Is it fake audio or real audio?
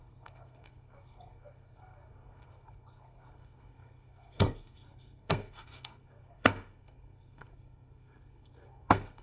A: fake